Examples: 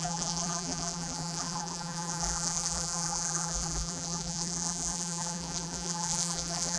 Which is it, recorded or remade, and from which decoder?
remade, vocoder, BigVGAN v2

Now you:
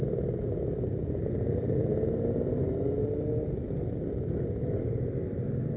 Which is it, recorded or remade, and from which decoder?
recorded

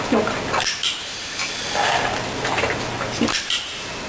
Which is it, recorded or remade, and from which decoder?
recorded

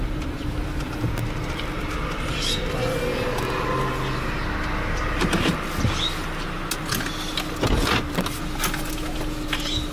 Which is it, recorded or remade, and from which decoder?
recorded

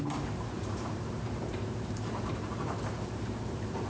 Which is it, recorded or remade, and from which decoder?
remade, vocoder, BigVGAN v2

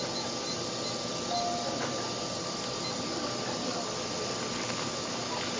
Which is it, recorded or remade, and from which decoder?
recorded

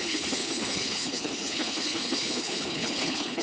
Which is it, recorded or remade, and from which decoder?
remade, codec, HILCodec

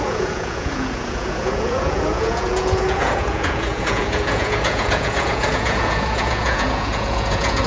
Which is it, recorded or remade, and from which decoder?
remade, vocoder, Vocos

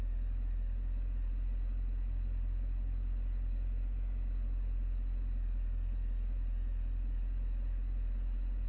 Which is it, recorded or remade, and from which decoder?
recorded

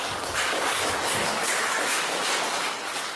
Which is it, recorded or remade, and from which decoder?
remade, codec, DAC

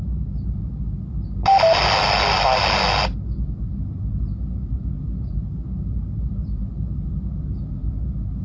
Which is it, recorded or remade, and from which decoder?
recorded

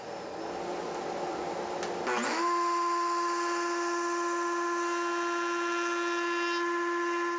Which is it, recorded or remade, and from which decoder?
recorded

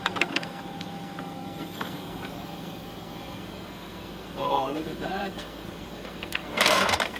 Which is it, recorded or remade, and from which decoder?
remade, codec, SNAC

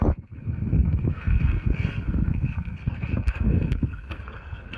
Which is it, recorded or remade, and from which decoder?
remade, codec, SNAC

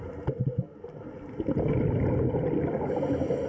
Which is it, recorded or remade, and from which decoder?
recorded